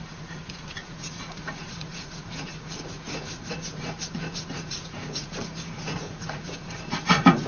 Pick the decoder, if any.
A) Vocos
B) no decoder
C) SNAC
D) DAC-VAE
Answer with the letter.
A